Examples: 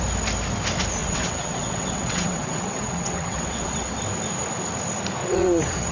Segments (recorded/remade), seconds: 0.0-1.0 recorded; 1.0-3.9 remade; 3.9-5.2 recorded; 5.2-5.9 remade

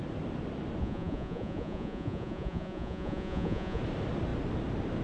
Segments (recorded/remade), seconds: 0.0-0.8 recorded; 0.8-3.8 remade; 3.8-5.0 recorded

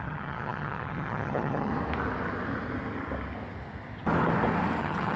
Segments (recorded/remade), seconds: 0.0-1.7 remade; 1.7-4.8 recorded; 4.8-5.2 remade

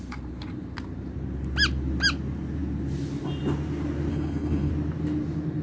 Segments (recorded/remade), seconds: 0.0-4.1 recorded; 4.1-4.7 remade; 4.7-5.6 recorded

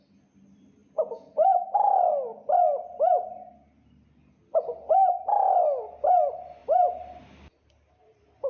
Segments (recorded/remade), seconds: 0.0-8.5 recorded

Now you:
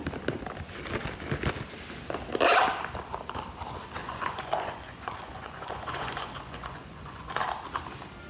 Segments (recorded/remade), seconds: 0.0-4.0 recorded; 4.0-7.3 remade; 7.3-8.3 recorded

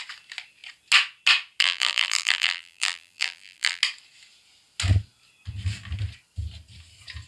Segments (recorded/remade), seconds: 0.0-1.6 recorded; 1.6-3.8 remade; 3.8-7.3 recorded

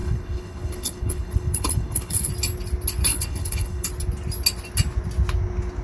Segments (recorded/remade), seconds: 0.0-2.3 remade; 2.3-3.1 recorded; 3.1-3.9 remade; 3.9-5.8 recorded